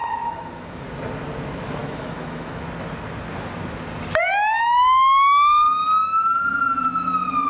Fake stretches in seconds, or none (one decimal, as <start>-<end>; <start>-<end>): 0.0-0.8; 1.8-2.6